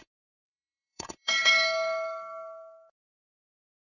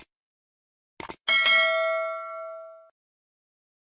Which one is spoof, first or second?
first